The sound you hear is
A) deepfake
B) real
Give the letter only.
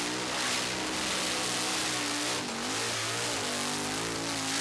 B